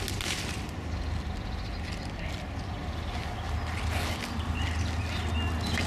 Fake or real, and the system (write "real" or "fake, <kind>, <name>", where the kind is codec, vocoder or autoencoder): real